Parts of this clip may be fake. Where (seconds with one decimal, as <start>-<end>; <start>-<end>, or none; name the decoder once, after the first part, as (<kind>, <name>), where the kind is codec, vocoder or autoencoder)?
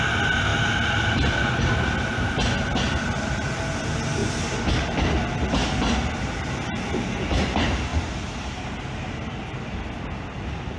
none